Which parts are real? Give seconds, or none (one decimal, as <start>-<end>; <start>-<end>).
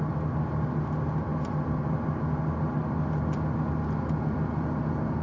0.0-5.2